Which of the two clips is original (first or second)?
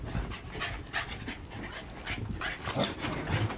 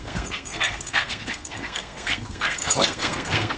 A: first